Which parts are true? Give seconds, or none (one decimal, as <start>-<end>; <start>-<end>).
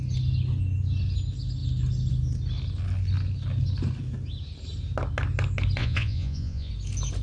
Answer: 0.0-5.8; 6.7-7.2